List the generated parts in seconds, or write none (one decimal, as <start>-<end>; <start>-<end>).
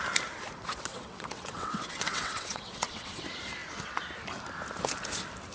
0.9-3.2